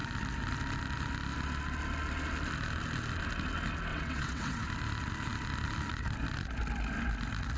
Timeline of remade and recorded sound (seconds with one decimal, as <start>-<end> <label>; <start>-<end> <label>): 0.0-3.9 recorded; 3.9-4.7 remade; 4.7-7.6 recorded